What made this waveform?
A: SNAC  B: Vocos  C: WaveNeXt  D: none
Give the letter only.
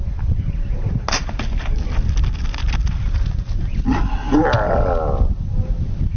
D